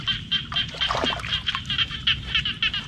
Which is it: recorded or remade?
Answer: recorded